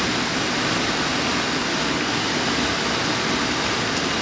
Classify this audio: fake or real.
real